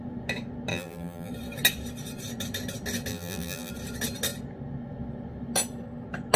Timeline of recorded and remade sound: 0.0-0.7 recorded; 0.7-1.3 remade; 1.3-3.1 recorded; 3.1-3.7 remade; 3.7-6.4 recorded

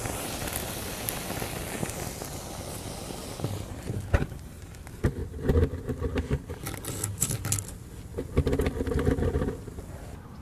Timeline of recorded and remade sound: 0.0-10.4 recorded

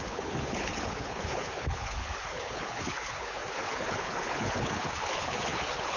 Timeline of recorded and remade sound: 0.0-6.0 remade